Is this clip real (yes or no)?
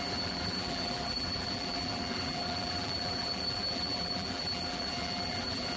no